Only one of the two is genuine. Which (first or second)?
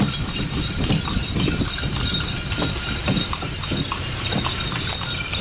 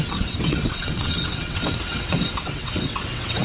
first